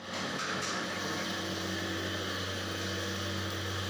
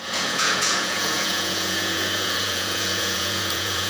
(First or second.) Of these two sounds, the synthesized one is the second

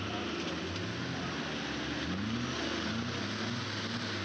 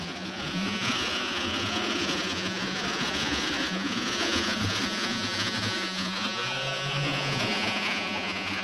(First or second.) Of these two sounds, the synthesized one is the second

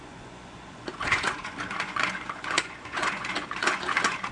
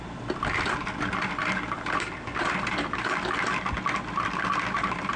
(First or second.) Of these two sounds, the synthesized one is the first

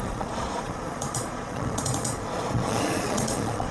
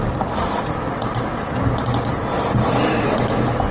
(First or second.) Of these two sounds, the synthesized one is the first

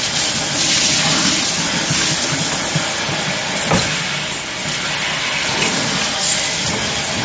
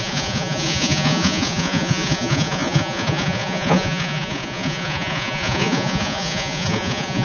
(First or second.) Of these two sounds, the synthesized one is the second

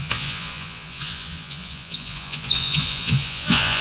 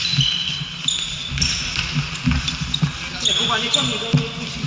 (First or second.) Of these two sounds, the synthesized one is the first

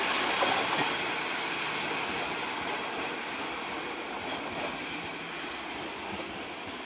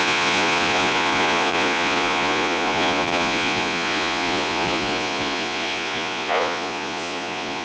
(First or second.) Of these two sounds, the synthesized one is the second